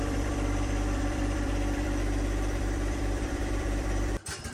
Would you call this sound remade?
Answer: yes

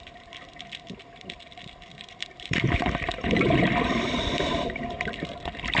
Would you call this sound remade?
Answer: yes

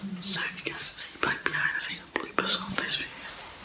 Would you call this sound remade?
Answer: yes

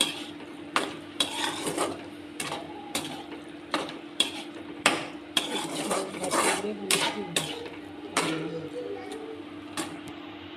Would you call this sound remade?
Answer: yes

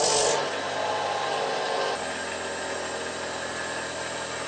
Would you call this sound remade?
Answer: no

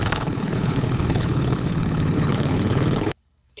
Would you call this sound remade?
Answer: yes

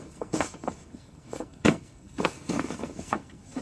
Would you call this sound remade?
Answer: yes